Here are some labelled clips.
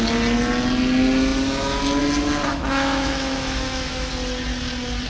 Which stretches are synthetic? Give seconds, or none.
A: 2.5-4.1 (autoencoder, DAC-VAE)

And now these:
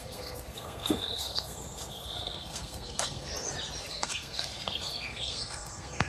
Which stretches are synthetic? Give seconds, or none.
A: 0.0-3.3 (codec, SNAC); 3.9-6.1

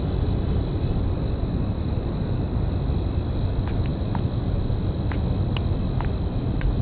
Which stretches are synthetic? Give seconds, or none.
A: none

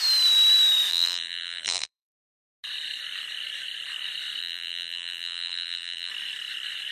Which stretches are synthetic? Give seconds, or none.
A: 0.9-2.4 (vocoder, BigVGAN v2); 4.4-6.1